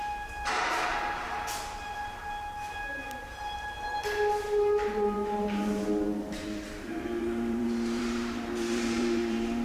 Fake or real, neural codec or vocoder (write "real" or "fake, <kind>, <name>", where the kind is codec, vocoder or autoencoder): fake, vocoder, BigVGAN v2